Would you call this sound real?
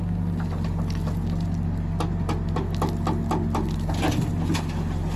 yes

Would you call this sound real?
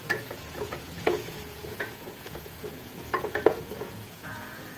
no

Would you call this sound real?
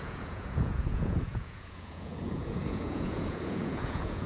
no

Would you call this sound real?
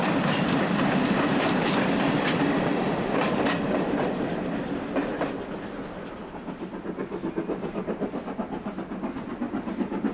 yes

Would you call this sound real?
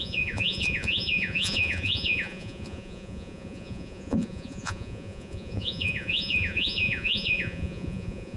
no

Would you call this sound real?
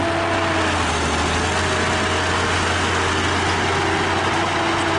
yes